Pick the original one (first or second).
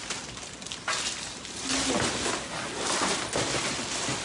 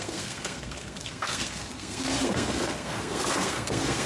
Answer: first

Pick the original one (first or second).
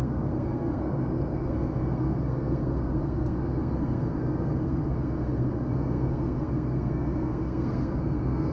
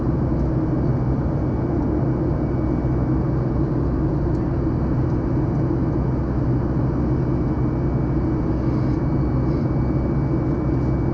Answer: second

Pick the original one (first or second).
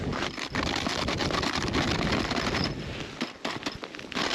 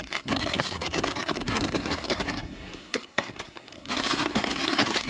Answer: first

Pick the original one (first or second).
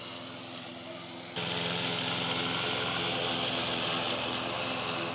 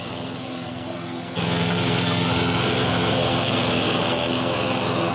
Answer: first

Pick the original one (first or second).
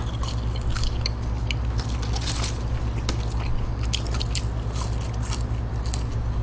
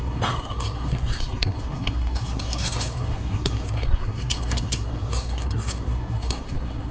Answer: first